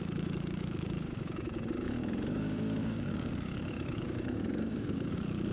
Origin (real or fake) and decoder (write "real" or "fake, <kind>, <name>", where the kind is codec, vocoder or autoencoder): fake, codec, DAC